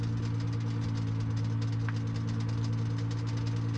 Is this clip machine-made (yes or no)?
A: no